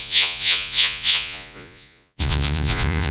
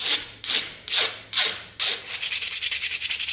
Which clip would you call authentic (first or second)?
second